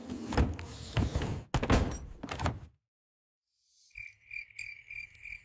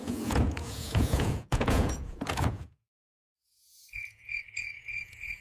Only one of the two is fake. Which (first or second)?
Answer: second